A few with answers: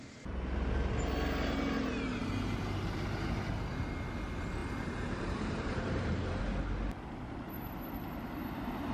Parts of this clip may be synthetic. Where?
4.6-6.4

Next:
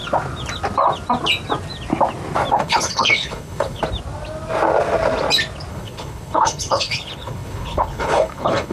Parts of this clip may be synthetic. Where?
2.5-3.8; 5.7-8.7

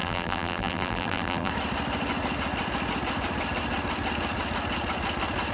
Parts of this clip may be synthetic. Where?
0.0-1.5